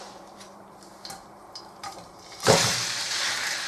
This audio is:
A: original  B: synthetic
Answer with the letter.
B